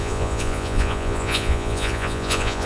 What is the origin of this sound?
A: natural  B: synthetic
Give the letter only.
B